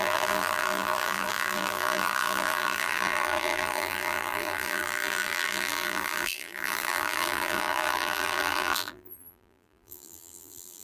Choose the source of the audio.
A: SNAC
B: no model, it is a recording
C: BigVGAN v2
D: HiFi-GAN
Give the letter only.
C